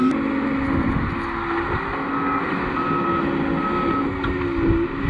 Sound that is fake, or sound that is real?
real